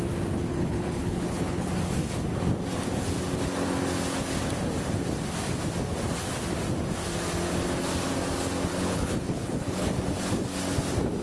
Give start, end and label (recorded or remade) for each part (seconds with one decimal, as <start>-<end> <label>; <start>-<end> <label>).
0.0-0.5 recorded; 0.5-1.7 remade; 1.7-8.7 recorded; 8.7-9.9 remade; 9.9-11.2 recorded